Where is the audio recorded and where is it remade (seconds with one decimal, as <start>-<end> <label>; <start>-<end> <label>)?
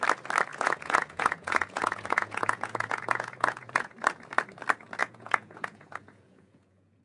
0.0-0.5 recorded; 0.5-3.9 remade; 3.9-5.0 recorded; 5.0-7.0 remade